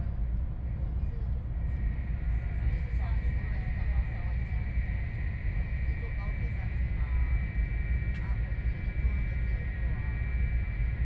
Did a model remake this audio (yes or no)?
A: no